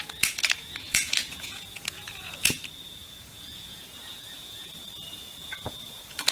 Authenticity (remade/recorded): remade